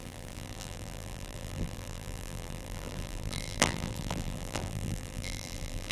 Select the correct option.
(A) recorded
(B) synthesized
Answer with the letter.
B